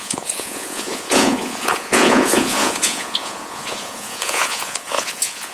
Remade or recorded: remade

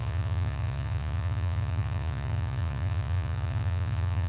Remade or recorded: remade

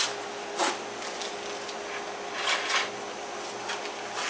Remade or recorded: recorded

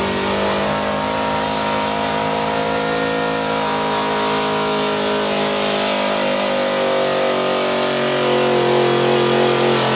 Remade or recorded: recorded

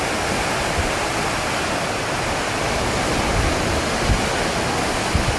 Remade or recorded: recorded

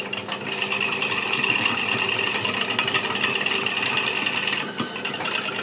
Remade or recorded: recorded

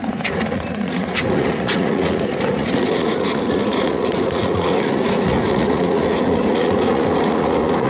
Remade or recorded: remade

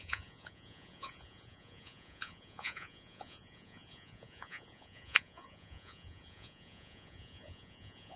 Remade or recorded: remade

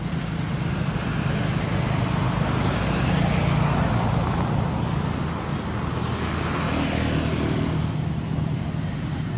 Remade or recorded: recorded